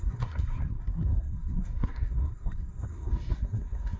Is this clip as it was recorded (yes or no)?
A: no